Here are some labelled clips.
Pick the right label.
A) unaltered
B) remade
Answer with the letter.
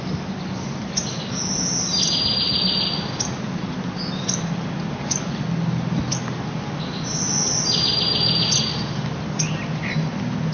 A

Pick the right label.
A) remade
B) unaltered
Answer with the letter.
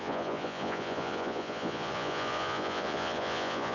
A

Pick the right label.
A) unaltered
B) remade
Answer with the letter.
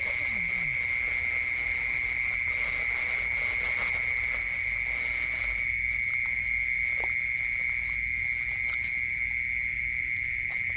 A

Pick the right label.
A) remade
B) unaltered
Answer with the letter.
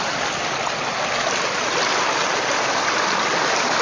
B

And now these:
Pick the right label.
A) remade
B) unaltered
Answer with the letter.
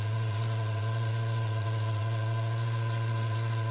A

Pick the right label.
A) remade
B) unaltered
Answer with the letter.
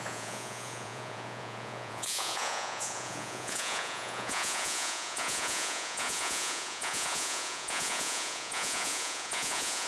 A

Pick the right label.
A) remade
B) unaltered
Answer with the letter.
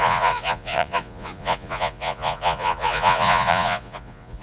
A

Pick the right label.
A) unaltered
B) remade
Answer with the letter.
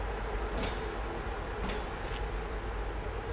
A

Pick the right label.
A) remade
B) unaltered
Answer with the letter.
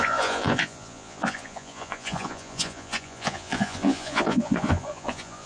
A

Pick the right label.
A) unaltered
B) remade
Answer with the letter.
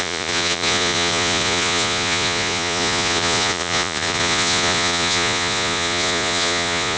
B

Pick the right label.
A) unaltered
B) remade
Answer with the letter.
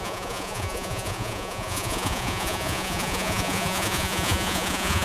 B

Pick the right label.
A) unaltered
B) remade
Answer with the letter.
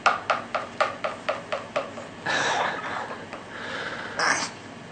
A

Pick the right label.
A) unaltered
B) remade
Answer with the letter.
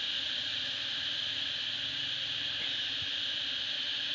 A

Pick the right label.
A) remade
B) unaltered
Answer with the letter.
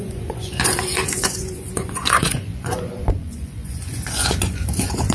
A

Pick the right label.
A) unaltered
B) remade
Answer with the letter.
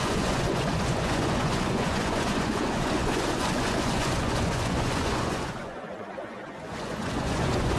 B